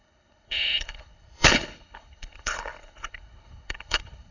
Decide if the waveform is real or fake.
fake